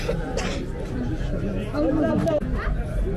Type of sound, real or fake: real